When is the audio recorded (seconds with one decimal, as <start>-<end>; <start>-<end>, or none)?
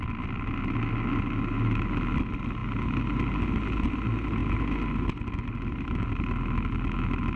0.0-7.4